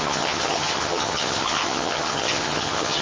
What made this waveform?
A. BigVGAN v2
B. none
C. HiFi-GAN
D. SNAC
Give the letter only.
C